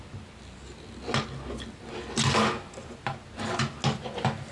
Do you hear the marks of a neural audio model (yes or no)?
no